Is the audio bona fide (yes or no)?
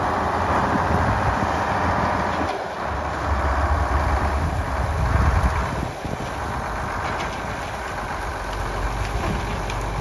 yes